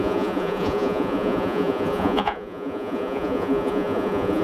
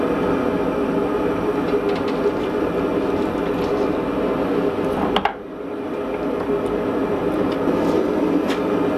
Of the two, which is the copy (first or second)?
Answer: first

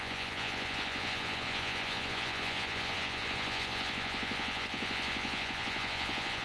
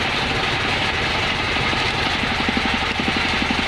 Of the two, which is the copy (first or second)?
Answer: first